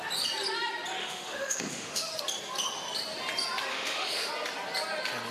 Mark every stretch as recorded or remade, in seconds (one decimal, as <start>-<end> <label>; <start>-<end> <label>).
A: 0.0-1.0 recorded; 1.0-2.1 remade; 2.1-3.7 recorded; 3.7-4.3 remade; 4.3-5.3 recorded